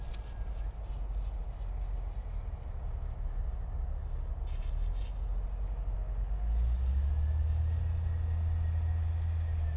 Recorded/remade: recorded